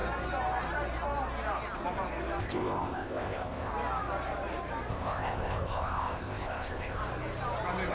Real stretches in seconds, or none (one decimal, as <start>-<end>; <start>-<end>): 0.0-2.4; 3.7-4.9; 7.0-7.9